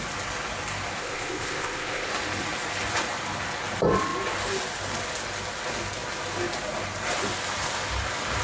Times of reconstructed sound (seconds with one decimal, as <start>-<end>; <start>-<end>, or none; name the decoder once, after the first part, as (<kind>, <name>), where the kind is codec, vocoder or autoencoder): 1.0-2.1 (codec, ZipCodec)